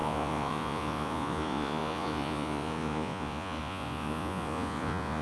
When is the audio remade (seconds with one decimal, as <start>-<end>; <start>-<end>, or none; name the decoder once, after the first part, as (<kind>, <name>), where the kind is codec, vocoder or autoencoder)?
0.0-5.2 (vocoder, Vocos)